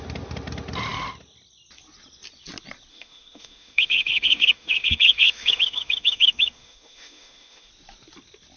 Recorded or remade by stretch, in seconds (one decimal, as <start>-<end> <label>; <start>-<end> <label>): 0.0-2.9 recorded; 2.9-7.7 remade; 7.7-8.6 recorded